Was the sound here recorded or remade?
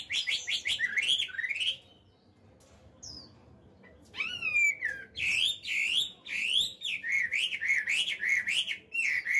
recorded